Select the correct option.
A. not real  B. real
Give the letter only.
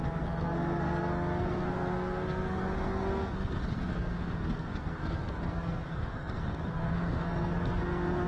A